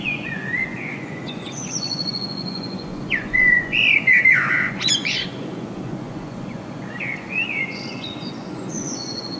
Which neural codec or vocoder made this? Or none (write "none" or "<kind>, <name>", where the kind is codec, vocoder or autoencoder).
vocoder, Vocos